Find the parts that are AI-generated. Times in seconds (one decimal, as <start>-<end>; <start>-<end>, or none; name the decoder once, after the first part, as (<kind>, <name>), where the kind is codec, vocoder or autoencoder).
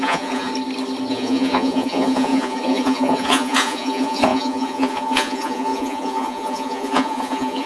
0.0-0.5 (vocoder, Vocos); 1.1-7.7